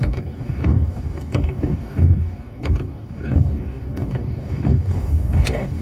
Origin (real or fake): fake